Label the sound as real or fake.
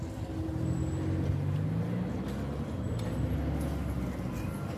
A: real